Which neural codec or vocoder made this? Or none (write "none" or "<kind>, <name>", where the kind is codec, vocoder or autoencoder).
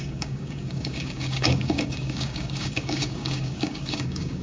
codec, DAC